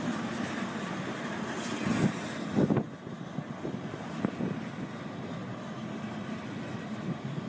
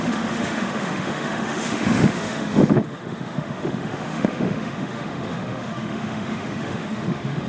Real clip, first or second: first